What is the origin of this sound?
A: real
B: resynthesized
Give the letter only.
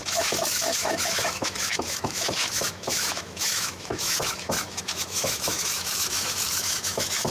B